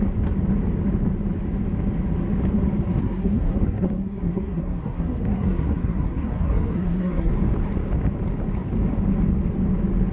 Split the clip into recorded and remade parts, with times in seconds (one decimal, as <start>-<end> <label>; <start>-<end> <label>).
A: 0.0-3.0 recorded; 3.0-7.3 remade; 7.3-10.1 recorded